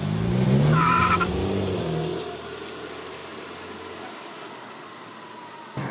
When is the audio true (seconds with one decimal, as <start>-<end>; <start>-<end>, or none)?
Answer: 0.0-5.9